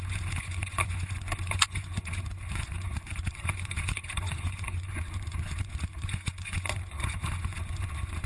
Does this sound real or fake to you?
fake